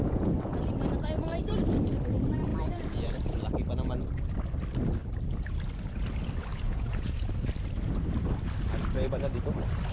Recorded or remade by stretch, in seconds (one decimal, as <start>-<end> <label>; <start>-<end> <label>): 0.0-0.6 remade; 0.6-2.5 recorded; 2.5-3.4 remade; 3.4-6.5 recorded; 6.5-7.3 remade; 7.3-9.9 recorded